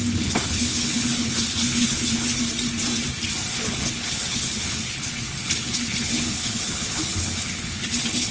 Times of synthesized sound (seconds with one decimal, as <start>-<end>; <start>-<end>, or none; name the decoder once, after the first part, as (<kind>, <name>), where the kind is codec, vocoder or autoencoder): 0.0-2.4 (codec, HILCodec); 3.5-8.3